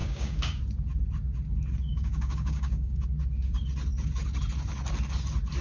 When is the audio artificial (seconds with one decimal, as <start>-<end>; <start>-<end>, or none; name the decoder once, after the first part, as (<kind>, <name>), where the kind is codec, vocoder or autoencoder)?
0.0-0.6 (codec, DAC); 1.9-3.0